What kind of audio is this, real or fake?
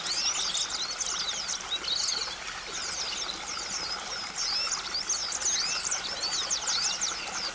real